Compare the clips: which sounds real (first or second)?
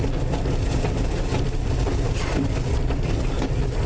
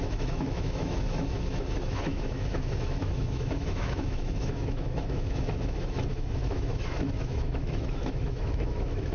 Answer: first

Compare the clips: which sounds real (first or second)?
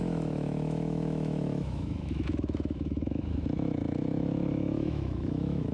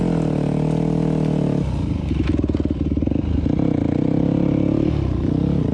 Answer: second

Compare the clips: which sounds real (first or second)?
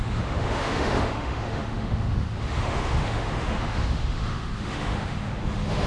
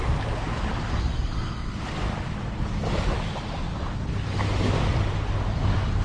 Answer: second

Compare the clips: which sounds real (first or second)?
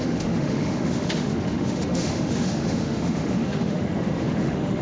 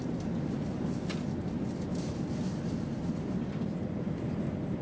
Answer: second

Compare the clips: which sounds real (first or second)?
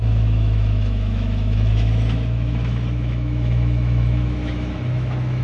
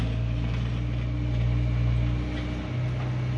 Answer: second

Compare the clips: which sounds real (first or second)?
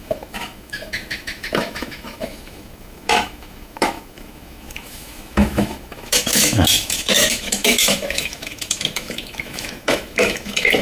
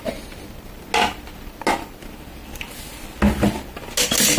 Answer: second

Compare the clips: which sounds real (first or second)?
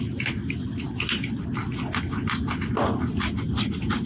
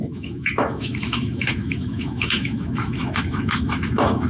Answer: first